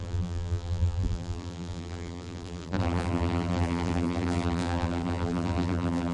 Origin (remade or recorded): remade